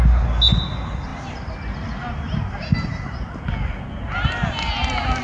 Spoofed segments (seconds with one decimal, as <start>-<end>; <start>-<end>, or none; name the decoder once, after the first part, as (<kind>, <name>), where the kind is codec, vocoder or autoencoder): none